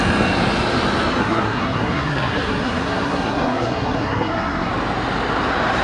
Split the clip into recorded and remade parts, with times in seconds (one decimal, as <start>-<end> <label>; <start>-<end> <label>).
0.0-1.2 recorded; 1.2-4.7 remade; 4.7-5.8 recorded